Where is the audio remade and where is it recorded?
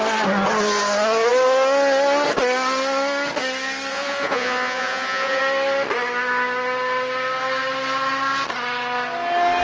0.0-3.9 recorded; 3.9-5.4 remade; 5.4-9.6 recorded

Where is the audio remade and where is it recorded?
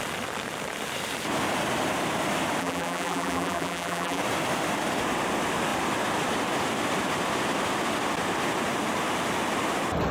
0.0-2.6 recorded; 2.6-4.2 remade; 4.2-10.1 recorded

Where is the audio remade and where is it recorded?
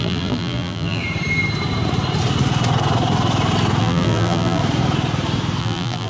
0.0-1.0 remade; 1.0-3.8 recorded; 3.8-4.6 remade; 4.6-5.6 recorded; 5.6-6.1 remade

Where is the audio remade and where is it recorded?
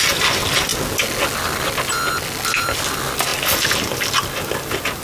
0.0-5.0 recorded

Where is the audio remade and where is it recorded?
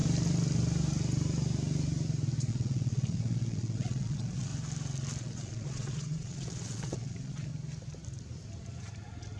0.0-2.5 recorded; 2.5-4.5 remade; 4.5-5.2 recorded; 5.2-7.5 remade; 7.5-9.4 recorded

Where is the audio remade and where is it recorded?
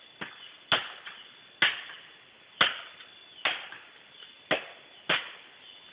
0.0-5.9 recorded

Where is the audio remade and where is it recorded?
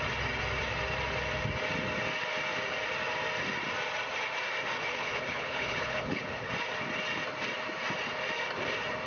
0.0-4.9 recorded; 4.9-6.5 remade; 6.5-9.1 recorded